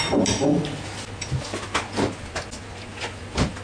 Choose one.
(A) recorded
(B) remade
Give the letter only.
A